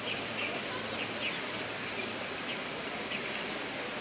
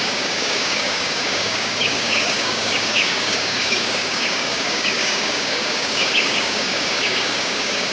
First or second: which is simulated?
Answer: second